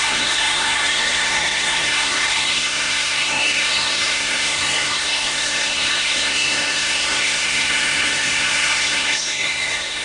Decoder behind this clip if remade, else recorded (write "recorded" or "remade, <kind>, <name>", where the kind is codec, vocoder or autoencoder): remade, codec, SNAC